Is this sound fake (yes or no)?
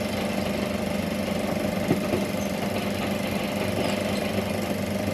no